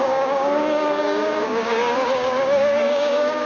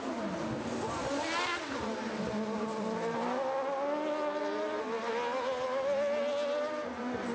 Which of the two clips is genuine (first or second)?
second